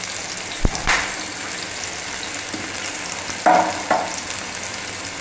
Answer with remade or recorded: recorded